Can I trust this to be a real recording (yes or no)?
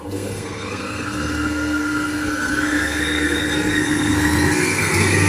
no